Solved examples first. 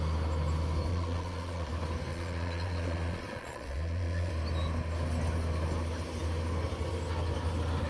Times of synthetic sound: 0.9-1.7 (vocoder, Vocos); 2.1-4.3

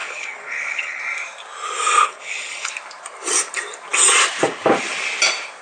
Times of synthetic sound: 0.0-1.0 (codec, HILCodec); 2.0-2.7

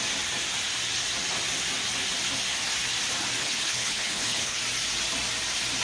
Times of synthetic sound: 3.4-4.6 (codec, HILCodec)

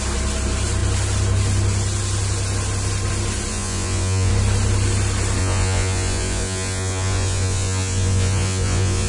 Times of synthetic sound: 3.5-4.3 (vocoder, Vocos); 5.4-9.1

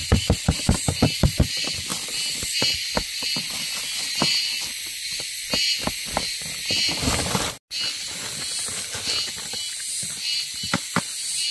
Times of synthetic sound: 0.0-1.5 (vocoder, BigVGAN v2)